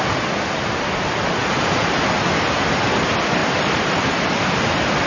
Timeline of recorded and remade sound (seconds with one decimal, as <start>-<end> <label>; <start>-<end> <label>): 0.0-3.4 recorded; 3.4-4.4 remade; 4.4-5.1 recorded